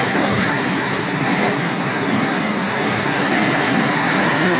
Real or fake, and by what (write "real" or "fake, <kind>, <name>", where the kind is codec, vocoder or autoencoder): fake, codec, SNAC